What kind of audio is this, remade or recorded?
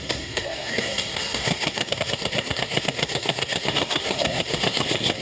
remade